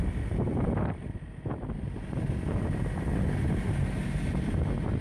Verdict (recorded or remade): recorded